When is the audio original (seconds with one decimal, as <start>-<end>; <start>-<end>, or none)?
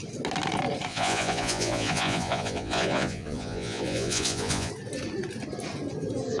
0.0-0.9; 4.7-6.4